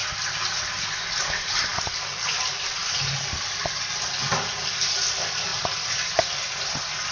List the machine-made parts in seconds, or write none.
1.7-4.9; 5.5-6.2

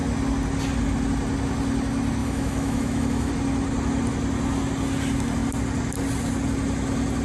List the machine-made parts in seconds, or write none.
2.2-3.3

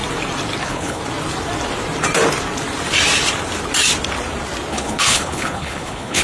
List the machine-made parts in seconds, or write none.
0.6-1.0; 4.7-6.2

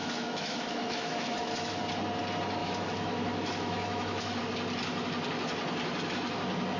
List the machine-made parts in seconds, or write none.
0.0-1.8; 2.6-4.4